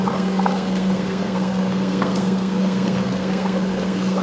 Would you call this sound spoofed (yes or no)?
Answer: yes